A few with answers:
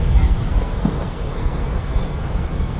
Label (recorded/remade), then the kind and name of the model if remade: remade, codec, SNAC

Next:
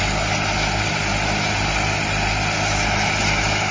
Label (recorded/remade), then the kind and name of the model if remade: recorded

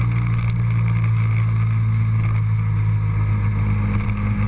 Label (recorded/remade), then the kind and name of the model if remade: recorded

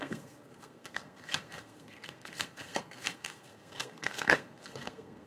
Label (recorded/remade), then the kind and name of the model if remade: remade, codec, SNAC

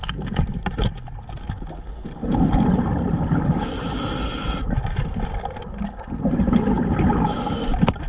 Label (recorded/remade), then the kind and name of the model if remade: recorded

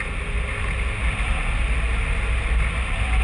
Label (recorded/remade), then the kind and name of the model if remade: recorded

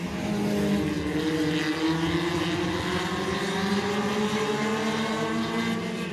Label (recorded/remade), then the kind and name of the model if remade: recorded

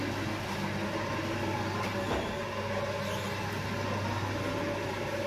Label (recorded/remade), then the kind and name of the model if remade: recorded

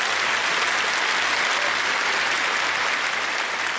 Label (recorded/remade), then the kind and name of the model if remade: recorded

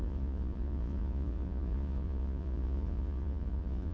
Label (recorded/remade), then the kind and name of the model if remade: remade, vocoder, Vocos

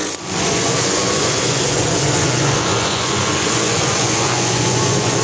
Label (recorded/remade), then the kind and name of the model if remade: remade, vocoder, Vocos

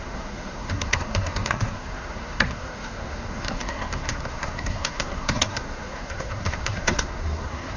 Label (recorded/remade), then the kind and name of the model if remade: remade, codec, SNAC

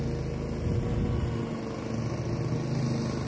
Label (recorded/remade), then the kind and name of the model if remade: recorded